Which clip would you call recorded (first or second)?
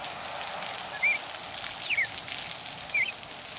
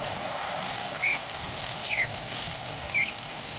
first